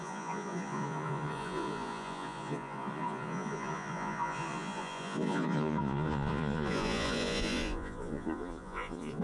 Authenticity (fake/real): fake